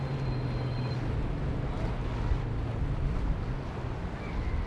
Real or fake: real